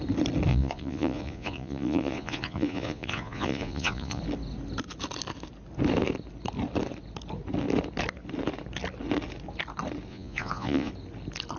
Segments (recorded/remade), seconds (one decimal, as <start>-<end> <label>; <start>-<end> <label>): 0.0-0.5 recorded; 0.5-4.2 remade; 4.2-10.1 recorded; 10.1-10.9 remade; 10.9-11.6 recorded